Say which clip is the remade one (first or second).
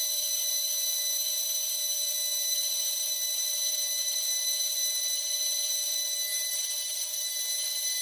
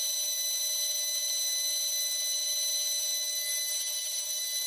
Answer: first